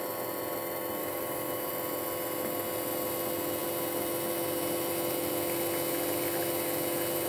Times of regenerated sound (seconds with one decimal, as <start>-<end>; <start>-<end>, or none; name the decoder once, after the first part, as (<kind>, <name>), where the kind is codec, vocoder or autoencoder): 1.0-1.7 (autoencoder, DAC-VAE)